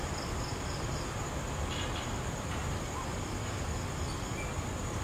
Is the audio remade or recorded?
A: recorded